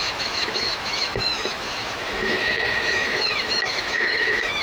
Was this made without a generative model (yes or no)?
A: no